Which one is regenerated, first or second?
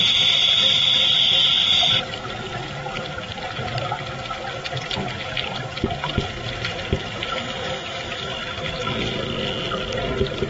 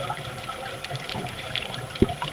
second